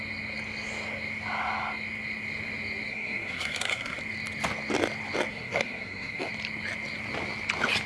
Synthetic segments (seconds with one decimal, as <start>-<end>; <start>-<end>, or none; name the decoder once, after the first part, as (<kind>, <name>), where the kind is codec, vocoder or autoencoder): 2.9-4.0 (codec, SNAC); 5.3-6.3